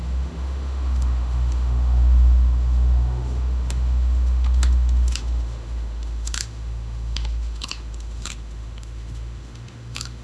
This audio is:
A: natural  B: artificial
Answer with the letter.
B